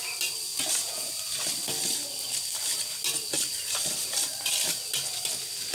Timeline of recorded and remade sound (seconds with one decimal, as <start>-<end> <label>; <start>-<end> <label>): 0.0-0.5 recorded; 0.5-1.1 remade; 1.1-5.7 recorded